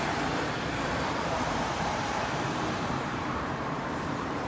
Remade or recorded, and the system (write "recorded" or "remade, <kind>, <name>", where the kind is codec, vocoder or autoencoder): remade, vocoder, BigVGAN v2